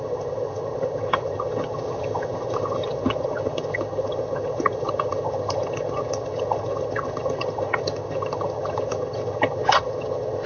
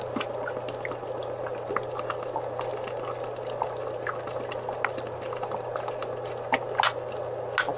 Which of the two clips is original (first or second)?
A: second